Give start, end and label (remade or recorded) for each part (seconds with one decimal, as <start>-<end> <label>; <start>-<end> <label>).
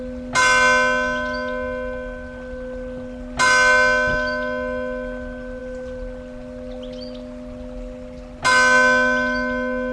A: 0.0-9.9 recorded